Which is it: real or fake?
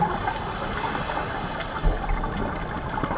real